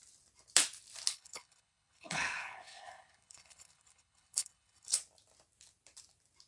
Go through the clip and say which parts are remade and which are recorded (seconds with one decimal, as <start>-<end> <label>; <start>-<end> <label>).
0.0-1.1 recorded; 1.1-5.0 remade; 5.0-6.5 recorded